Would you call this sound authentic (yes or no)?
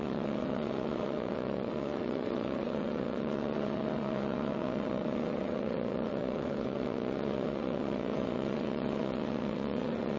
no